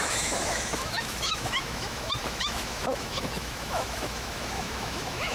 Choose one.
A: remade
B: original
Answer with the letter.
A